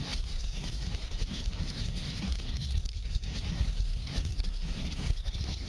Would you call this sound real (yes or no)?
no